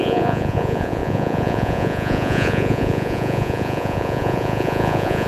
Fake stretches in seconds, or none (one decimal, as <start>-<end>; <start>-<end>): 0.0-5.3